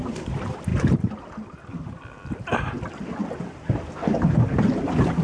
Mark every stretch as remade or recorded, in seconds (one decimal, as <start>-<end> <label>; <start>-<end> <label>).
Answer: 0.0-5.2 recorded